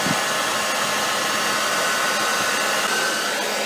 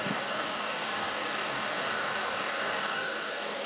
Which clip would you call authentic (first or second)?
first